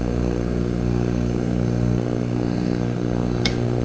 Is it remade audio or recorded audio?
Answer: remade